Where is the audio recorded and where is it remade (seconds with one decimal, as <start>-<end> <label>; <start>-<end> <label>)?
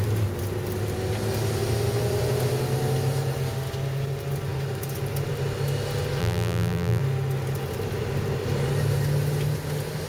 0.0-6.2 recorded; 6.2-7.0 remade; 7.0-10.1 recorded